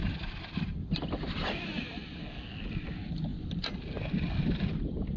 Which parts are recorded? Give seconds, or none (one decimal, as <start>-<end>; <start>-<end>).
2.2-5.2